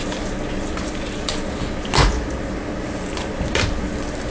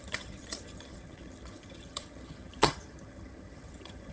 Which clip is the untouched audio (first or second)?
first